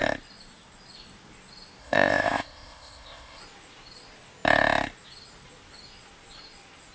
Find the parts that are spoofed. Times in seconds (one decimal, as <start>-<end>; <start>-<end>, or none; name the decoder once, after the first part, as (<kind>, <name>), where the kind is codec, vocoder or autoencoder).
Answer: 1.8-3.4 (codec, ZipCodec)